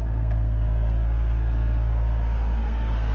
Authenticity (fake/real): fake